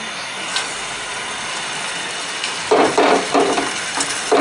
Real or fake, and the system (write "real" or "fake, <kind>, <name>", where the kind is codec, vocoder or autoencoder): real